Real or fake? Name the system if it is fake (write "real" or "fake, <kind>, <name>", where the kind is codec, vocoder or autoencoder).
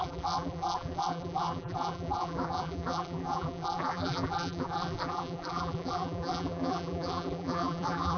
fake, vocoder, BigVGAN v2